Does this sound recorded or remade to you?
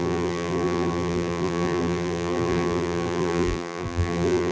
remade